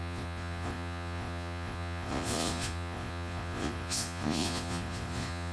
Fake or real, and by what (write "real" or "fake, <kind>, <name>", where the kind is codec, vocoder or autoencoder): fake, vocoder, Vocos